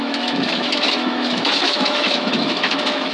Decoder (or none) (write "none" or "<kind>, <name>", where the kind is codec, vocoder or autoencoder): autoencoder, DAC-VAE